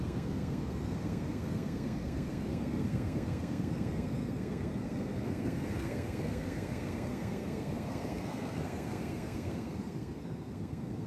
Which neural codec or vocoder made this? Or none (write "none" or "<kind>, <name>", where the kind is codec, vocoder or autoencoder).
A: codec, SNAC